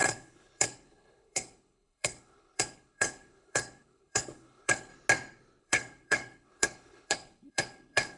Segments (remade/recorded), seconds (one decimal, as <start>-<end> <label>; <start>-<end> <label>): 0.0-4.9 remade; 4.9-5.6 recorded; 5.6-8.2 remade